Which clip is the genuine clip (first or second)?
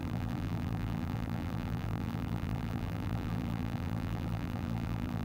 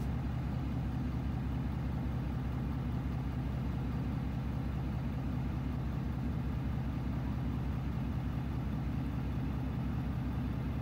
second